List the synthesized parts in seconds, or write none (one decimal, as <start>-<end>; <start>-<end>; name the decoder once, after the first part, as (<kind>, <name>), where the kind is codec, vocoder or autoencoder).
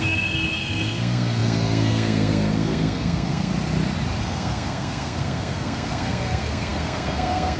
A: 0.0-3.5 (codec, SNAC); 4.2-7.6